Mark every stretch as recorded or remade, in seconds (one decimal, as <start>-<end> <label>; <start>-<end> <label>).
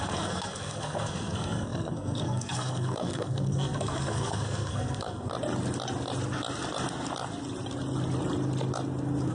0.0-5.3 remade; 5.3-9.3 recorded